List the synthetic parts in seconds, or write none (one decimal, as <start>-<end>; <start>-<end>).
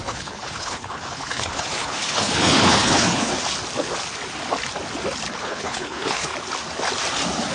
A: 0.0-3.3; 5.4-6.3